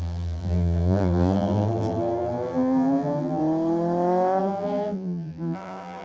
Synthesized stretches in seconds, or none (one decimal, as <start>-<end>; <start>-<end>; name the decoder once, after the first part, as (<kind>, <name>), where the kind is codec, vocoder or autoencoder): 0.0-3.4 (vocoder, BigVGAN v2); 4.4-6.0